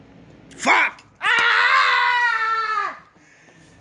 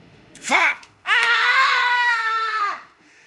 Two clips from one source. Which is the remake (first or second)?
second